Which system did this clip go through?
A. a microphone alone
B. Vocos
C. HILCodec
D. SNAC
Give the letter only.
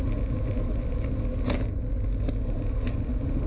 A